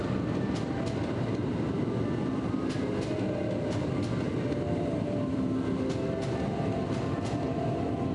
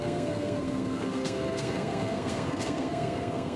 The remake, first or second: second